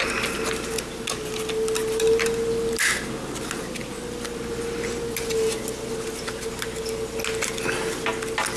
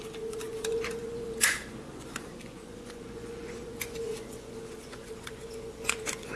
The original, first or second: first